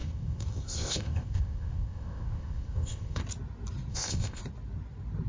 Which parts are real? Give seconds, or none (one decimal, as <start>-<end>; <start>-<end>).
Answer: 3.2-3.9; 4.4-5.3